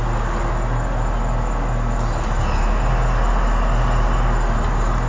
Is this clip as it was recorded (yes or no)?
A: yes